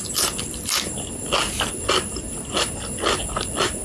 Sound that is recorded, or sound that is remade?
recorded